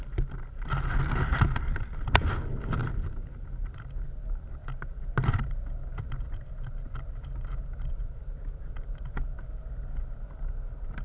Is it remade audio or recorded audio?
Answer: recorded